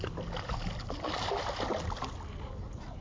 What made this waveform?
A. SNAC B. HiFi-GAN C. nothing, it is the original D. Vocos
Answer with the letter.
C